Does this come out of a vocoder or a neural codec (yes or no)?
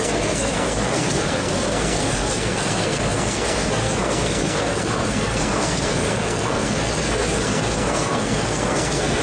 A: yes